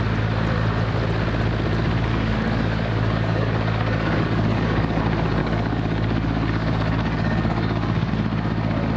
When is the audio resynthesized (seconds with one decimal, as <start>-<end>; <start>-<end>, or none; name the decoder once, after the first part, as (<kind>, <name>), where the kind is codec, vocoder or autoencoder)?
2.1-5.0 (codec, DAC); 5.4-8.1